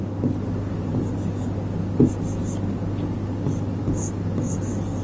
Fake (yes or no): no